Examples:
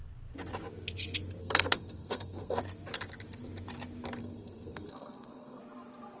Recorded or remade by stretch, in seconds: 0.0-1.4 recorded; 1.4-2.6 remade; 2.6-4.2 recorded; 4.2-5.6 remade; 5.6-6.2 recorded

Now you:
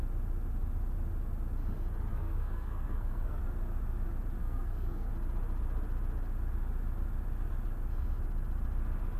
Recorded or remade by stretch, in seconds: 0.0-2.1 recorded; 2.1-3.4 remade; 3.4-4.4 recorded; 4.4-5.1 remade; 5.1-9.2 recorded

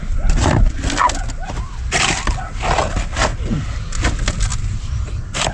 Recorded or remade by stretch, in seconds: 0.0-5.5 recorded

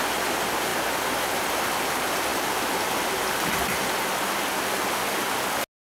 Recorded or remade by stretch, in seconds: 0.0-5.9 recorded